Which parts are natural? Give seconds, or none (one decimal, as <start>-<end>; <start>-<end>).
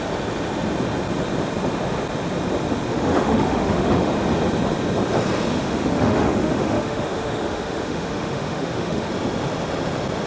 0.0-2.9; 4.1-5.5; 9.1-10.3